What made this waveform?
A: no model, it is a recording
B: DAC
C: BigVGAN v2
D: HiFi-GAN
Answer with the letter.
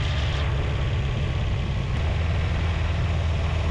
A